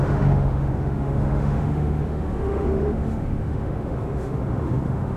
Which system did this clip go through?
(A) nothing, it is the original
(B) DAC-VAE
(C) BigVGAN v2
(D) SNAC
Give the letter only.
B